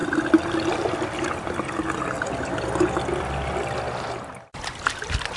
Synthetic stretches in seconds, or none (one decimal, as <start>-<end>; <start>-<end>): 3.2-5.4